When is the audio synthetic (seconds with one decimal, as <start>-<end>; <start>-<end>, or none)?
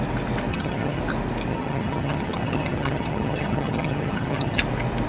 0.5-1.0; 1.5-4.6